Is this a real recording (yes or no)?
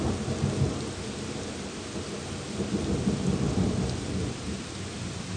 yes